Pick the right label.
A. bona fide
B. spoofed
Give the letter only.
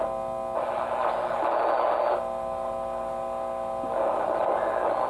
A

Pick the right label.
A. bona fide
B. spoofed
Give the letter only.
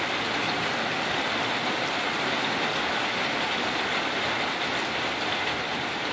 A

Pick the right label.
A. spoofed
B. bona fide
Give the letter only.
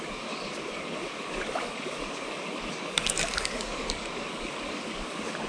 A